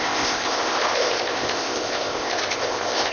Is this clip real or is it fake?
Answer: fake